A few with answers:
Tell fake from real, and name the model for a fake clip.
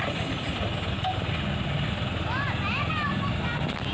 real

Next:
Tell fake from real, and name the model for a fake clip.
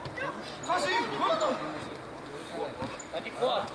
real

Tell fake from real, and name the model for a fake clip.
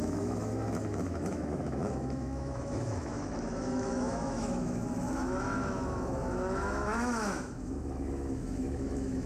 fake, autoencoder, DAC-VAE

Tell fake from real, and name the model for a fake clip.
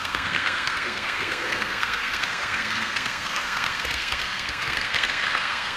fake, codec, SNAC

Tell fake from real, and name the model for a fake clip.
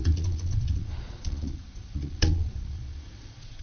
fake, vocoder, Vocos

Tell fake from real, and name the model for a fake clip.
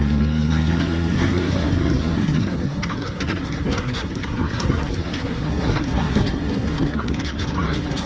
fake, codec, SNAC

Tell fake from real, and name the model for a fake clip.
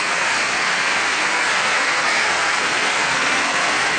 fake, codec, SNAC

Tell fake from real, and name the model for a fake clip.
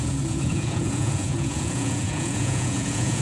fake, vocoder, Vocos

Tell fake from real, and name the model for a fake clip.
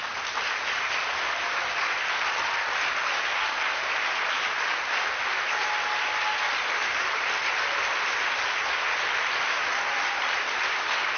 real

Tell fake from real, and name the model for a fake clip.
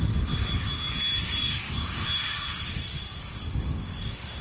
fake, codec, DAC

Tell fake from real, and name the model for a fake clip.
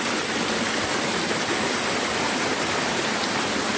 real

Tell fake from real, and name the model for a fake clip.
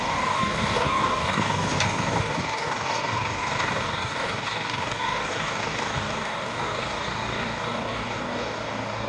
fake, codec, DAC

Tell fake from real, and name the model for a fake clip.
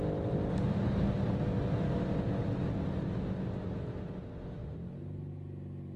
real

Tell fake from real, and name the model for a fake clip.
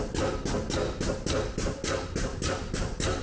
real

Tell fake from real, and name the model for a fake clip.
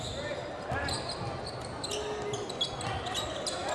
real